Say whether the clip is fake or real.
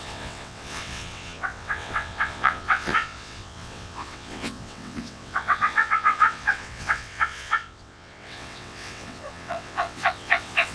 fake